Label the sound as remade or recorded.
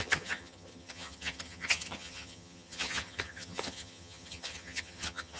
remade